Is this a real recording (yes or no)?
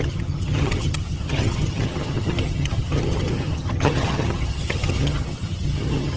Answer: no